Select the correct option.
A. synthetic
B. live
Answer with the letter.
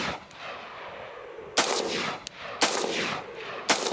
B